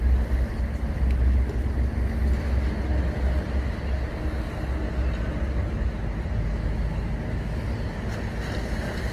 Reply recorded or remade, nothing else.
recorded